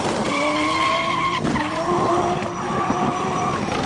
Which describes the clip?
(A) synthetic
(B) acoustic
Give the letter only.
B